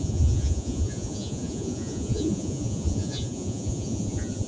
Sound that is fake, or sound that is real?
fake